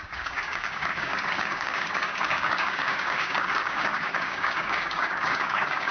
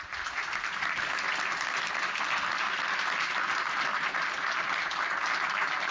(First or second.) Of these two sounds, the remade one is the first